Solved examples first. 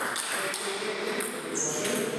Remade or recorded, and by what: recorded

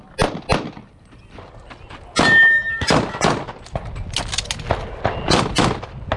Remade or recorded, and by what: recorded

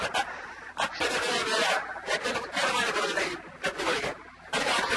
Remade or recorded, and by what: recorded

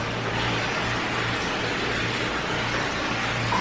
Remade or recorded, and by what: recorded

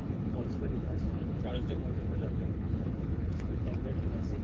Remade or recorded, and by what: remade, codec, HILCodec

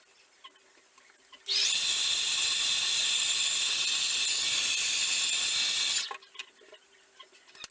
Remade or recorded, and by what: recorded